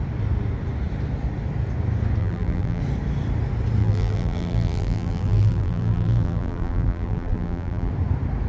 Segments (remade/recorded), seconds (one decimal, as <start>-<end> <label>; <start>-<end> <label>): 0.0-2.2 recorded; 2.2-2.8 remade; 2.8-3.8 recorded; 3.8-7.9 remade; 7.9-8.5 recorded